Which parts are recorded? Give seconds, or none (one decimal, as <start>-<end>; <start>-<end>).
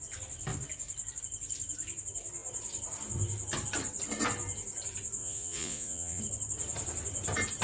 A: 0.0-5.2; 6.2-7.6